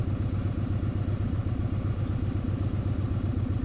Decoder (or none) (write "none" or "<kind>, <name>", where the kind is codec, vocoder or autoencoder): none